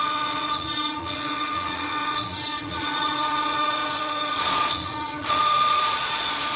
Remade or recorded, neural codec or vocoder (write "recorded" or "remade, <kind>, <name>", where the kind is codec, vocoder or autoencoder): remade, vocoder, Vocos